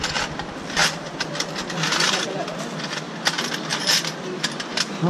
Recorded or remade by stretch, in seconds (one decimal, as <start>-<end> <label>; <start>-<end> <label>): 0.0-5.1 recorded